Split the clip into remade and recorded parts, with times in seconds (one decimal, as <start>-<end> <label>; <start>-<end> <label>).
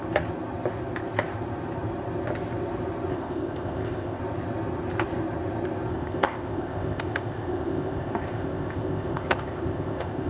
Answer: 0.0-3.1 recorded; 3.1-4.2 remade; 4.2-5.9 recorded; 5.9-10.3 remade